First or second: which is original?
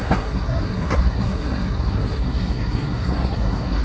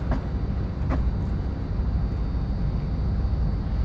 second